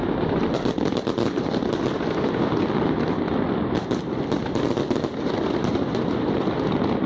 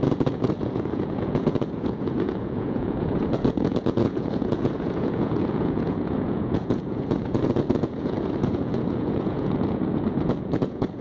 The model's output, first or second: second